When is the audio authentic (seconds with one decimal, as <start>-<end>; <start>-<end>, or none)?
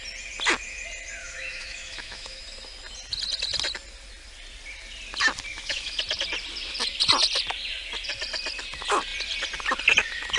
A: 0.0-1.2; 2.4-5.5; 6.0-10.4